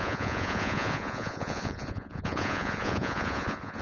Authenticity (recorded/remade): remade